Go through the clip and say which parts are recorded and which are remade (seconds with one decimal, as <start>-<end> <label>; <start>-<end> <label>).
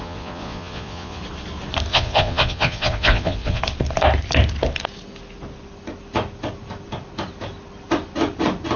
0.0-1.2 remade; 1.2-1.9 recorded; 1.9-3.6 remade; 3.6-8.8 recorded